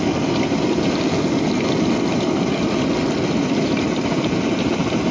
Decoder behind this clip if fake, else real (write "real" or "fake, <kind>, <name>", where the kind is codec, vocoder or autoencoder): real